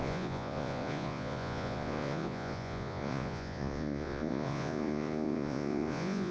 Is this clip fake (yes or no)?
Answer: yes